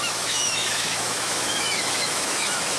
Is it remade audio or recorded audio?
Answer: remade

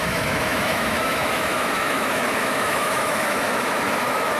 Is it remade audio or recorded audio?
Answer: remade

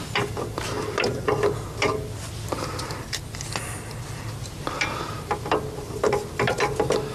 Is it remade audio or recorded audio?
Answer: recorded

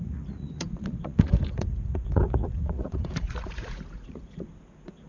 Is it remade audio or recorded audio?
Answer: remade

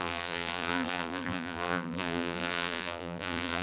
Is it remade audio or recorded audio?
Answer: remade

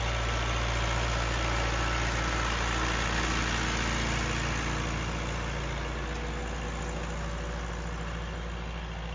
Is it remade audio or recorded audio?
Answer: recorded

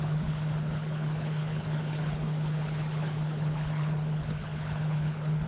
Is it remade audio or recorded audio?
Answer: remade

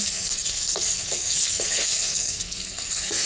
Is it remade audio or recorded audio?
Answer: remade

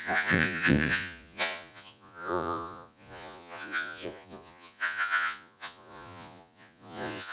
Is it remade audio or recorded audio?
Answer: remade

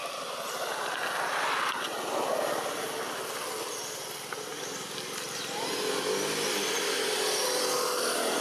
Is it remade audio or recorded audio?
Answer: recorded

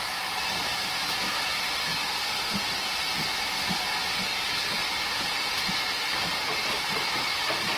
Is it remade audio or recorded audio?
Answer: recorded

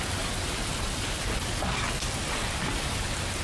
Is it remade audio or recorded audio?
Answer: recorded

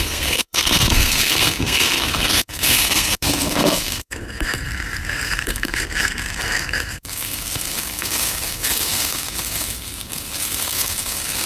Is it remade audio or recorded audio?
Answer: remade